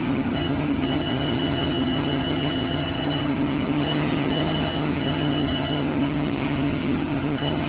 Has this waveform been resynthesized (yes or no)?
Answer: yes